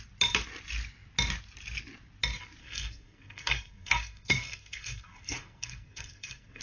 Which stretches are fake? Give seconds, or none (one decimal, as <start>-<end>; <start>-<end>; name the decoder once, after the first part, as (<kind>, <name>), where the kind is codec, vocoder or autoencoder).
2.6-6.6 (codec, SNAC)